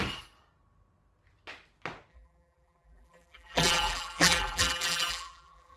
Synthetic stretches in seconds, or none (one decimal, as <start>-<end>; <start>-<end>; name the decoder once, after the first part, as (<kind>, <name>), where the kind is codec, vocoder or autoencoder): 2.1-5.8 (vocoder, BigVGAN v2)